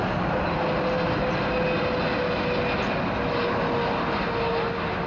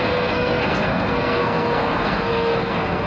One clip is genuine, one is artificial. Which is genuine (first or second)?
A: first